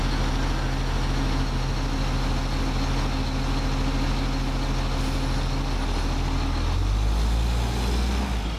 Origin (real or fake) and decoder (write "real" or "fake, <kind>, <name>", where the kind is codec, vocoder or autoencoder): real